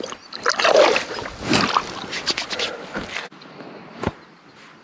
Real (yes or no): yes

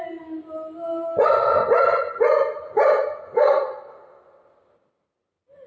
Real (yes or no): yes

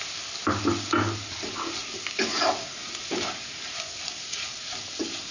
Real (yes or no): yes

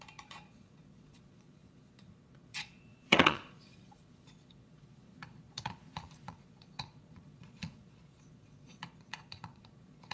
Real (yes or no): no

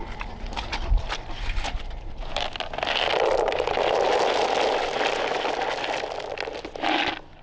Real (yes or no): yes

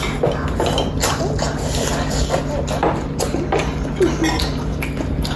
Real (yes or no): yes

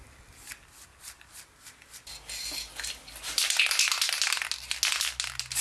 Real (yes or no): yes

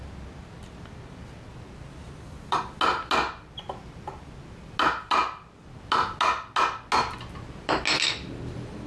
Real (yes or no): yes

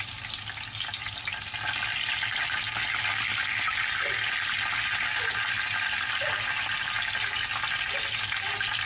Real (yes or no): yes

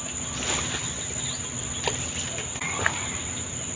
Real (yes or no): yes